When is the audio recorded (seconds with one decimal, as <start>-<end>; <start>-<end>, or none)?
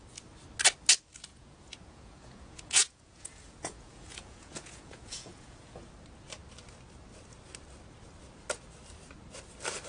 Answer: 0.0-1.3; 5.9-9.9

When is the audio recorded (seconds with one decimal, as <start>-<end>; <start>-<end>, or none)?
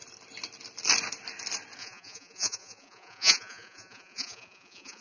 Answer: 0.0-1.8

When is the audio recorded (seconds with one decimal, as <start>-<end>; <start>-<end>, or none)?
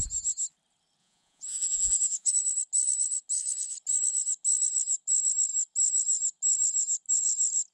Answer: 0.0-1.0; 2.3-7.7